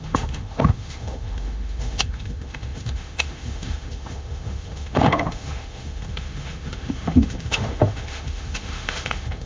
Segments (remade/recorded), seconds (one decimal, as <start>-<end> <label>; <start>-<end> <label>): 0.0-9.5 remade